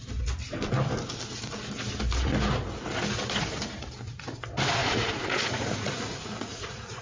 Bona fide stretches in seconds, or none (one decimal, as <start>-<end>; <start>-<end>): 0.0-4.8